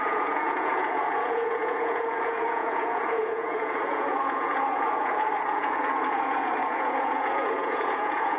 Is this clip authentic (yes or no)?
no